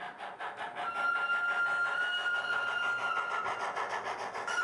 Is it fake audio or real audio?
real